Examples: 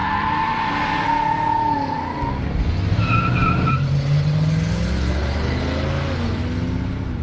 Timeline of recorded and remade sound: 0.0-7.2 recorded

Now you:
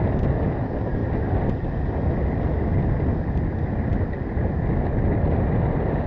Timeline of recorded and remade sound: 0.0-6.1 recorded

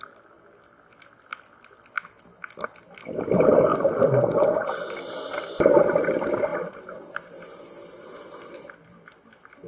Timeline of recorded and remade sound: 0.0-6.5 recorded; 6.5-8.5 remade; 8.5-9.7 recorded

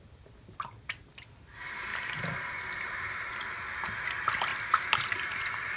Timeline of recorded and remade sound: 0.0-1.9 recorded; 1.9-3.5 remade; 3.5-4.5 recorded; 4.5-5.8 remade